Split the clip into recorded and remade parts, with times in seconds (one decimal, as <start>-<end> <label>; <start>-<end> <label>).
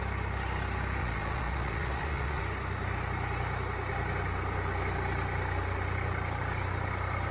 0.0-1.0 recorded; 1.0-2.4 remade; 2.4-7.3 recorded